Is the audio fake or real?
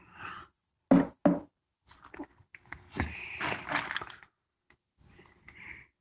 real